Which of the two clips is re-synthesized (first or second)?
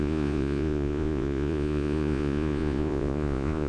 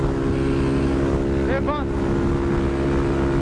first